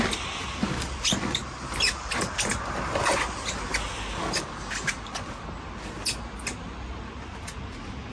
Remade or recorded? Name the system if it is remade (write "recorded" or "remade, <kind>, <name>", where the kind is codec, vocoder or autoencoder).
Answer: recorded